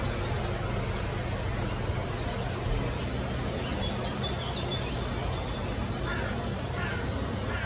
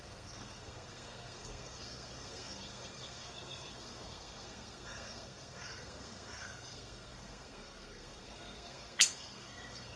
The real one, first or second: first